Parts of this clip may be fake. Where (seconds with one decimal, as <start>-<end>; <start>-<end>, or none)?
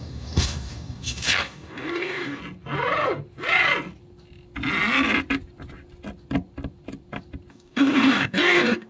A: 0.0-2.4; 7.5-8.9